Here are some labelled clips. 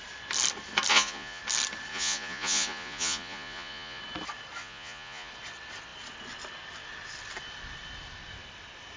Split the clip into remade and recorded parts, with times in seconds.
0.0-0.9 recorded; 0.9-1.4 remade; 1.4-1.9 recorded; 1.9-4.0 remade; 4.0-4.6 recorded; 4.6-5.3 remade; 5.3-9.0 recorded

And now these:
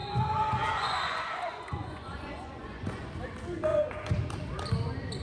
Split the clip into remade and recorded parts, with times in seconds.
0.0-3.1 remade; 3.1-3.7 recorded; 3.7-4.2 remade; 4.2-5.2 recorded